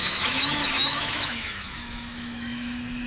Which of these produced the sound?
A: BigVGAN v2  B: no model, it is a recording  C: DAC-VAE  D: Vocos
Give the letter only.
C